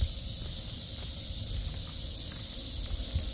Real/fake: real